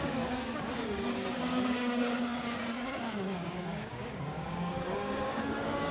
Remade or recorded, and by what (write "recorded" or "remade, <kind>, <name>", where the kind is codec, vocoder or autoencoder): remade, codec, DAC